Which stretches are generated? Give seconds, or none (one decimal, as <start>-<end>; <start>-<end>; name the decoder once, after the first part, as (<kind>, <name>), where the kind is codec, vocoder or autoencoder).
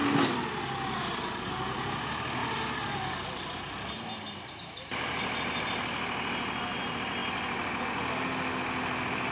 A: none